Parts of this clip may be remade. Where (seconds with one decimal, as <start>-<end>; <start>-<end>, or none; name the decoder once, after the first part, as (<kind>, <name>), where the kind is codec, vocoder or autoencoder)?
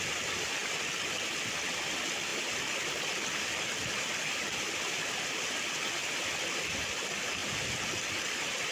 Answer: none